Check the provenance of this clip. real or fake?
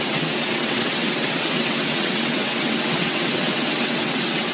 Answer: fake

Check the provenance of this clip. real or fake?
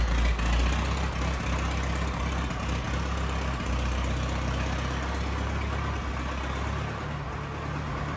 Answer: real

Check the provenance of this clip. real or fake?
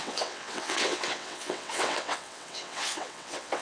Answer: fake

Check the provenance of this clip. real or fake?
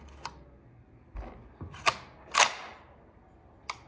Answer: real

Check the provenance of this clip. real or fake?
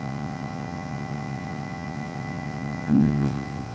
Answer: fake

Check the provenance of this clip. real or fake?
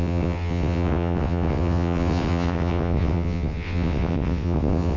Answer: fake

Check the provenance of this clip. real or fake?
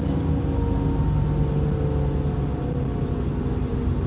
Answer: real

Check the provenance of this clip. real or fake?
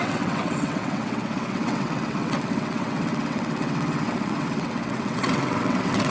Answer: fake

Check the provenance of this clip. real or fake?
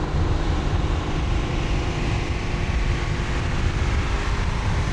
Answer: real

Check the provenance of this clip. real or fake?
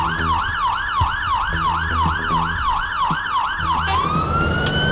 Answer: real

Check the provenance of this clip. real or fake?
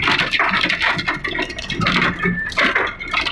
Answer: real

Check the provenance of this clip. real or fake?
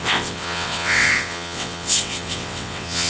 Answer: fake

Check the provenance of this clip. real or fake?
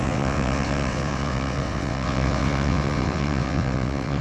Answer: fake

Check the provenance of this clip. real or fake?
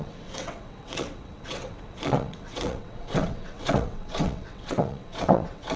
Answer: fake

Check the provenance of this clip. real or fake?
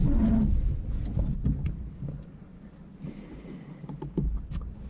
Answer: real